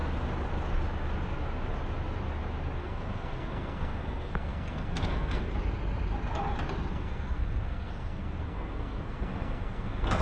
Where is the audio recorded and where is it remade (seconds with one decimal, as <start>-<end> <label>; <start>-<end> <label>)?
0.0-2.8 recorded; 2.8-5.5 remade; 5.5-6.9 recorded; 6.9-10.2 remade